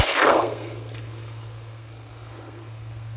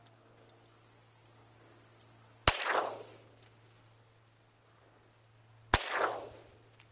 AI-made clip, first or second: first